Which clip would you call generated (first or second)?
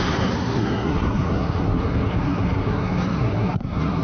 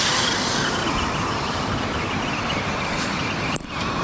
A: first